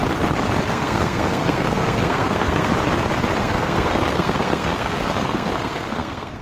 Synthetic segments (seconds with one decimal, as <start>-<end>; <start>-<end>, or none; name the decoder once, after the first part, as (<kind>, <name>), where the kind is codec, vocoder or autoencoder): 0.7-2.7 (codec, SNAC); 3.4-6.4